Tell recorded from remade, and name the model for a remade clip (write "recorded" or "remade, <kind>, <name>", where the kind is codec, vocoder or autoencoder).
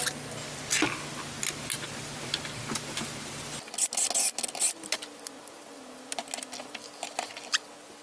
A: recorded